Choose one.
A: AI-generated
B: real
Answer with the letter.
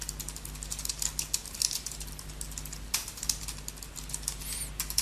B